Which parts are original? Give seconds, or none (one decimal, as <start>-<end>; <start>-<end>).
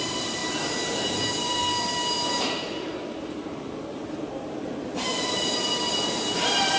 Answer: none